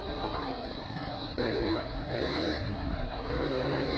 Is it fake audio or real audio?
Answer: fake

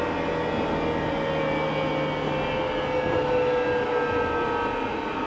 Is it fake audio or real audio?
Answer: real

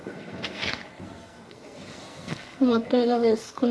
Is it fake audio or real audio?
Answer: fake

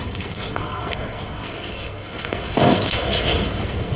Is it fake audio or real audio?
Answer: fake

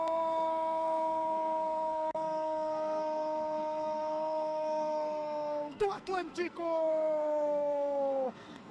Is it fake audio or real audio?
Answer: fake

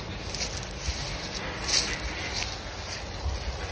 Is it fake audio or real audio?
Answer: real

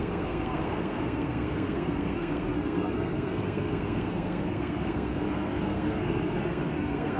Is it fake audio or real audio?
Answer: fake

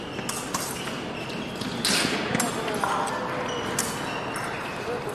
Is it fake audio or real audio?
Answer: real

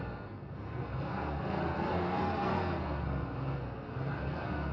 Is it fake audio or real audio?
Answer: fake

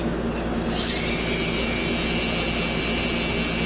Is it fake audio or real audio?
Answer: real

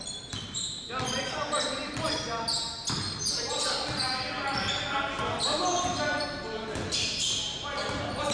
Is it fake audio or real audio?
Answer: real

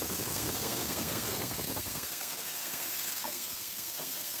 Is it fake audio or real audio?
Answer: fake